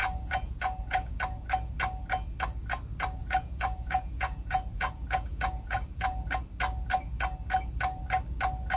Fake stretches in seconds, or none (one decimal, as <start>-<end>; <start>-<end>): 0.0-1.2; 3.2-6.4